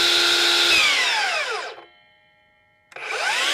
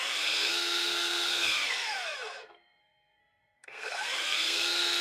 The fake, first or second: second